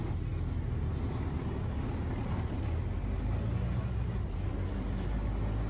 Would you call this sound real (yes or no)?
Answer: yes